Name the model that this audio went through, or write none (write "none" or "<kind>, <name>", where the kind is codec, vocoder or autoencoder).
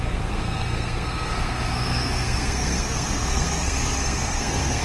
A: codec, SNAC